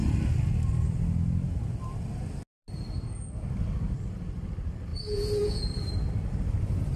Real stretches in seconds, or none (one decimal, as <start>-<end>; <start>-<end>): 0.0-4.9; 5.7-7.0

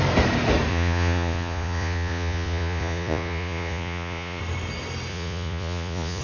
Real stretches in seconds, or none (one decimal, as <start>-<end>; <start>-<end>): 0.0-0.7; 4.4-5.1

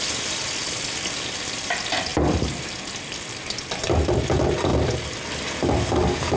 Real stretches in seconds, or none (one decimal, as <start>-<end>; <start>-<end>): 0.0-6.4